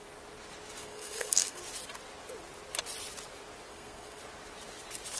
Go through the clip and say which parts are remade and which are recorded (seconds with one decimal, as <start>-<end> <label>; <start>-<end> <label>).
0.0-0.8 recorded; 0.8-1.6 remade; 1.6-3.7 recorded; 3.7-4.2 remade; 4.2-5.2 recorded